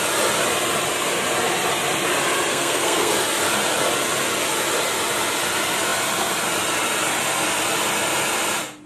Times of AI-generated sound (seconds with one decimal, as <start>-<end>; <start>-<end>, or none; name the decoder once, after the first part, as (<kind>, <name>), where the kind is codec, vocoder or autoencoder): 2.5-3.1 (codec, SNAC)